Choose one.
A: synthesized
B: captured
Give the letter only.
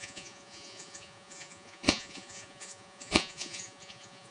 A